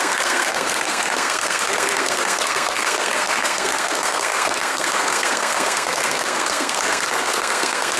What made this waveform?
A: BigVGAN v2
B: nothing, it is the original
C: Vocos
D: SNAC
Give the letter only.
D